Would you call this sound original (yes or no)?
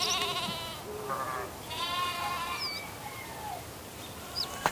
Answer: yes